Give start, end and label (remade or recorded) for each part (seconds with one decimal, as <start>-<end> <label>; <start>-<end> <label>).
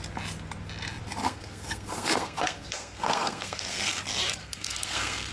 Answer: 0.0-1.2 recorded; 1.2-4.0 remade; 4.0-4.4 recorded; 4.4-5.3 remade